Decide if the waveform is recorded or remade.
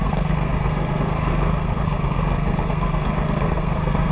remade